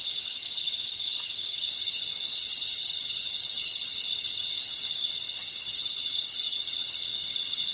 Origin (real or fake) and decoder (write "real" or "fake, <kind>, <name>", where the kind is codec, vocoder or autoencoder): fake, vocoder, HiFi-GAN